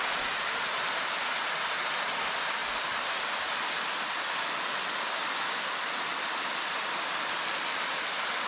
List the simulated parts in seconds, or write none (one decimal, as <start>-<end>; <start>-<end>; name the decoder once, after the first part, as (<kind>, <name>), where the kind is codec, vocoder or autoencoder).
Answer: none